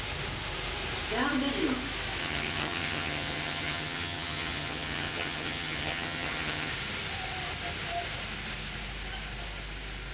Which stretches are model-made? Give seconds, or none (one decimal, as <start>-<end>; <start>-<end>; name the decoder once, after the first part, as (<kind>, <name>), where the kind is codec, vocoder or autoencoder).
2.2-6.7 (vocoder, HiFi-GAN)